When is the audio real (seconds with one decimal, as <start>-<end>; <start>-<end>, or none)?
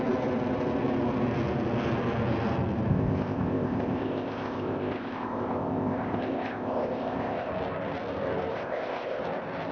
0.0-2.9; 7.5-8.5; 9.2-9.7